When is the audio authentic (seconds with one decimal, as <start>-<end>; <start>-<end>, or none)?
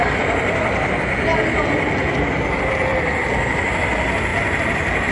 0.0-2.9; 3.7-4.3